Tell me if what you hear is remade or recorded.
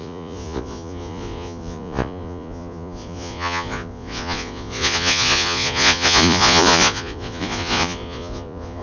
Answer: remade